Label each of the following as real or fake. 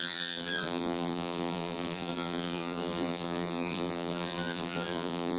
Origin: fake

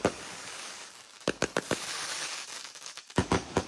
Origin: fake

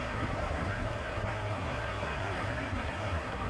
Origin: fake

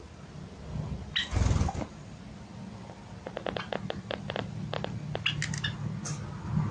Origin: real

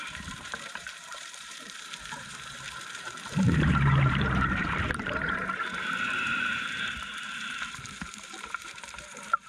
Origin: fake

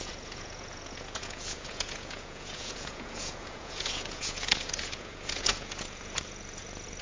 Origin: fake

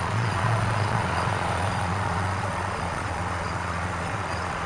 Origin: fake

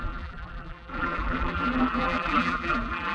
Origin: fake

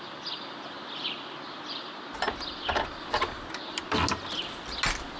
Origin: real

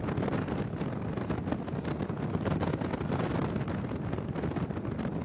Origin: real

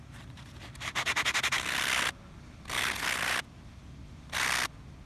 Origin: real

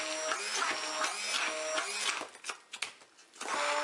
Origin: real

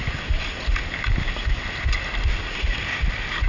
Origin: real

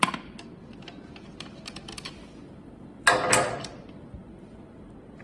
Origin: fake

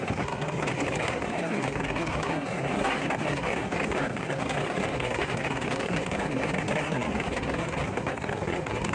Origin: fake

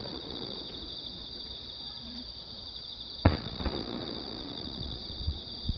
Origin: fake